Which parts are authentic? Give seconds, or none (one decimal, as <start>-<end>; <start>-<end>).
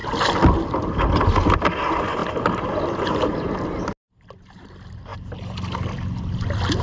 0.0-6.8